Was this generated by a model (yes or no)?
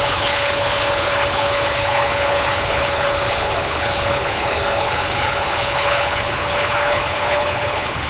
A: yes